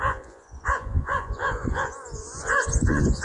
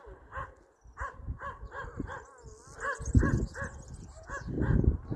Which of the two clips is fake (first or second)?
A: first